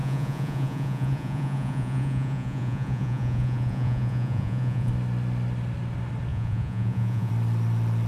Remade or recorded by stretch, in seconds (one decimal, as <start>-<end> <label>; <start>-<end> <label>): 0.0-4.9 remade; 4.9-6.3 recorded; 6.3-7.3 remade; 7.3-8.1 recorded